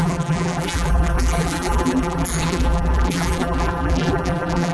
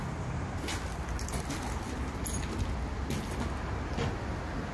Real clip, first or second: second